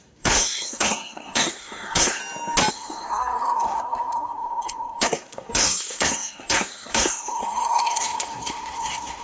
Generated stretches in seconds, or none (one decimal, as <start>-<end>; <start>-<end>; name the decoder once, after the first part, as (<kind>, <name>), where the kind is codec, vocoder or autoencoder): 0.0-2.2 (codec, SNAC); 2.7-9.2